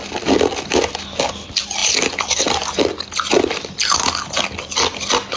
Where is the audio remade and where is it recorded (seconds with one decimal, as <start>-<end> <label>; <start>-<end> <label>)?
0.0-5.4 recorded

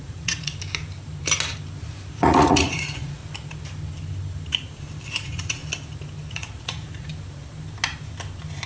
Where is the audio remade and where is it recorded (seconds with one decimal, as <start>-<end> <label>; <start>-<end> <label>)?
0.0-0.5 remade; 0.5-2.1 recorded; 2.1-3.2 remade; 3.2-5.1 recorded; 5.1-5.6 remade; 5.6-6.3 recorded; 6.3-7.1 remade; 7.1-8.7 recorded

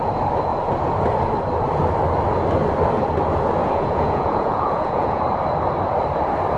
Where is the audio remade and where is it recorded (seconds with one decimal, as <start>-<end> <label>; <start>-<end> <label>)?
0.0-3.6 recorded; 3.6-5.2 remade; 5.2-6.6 recorded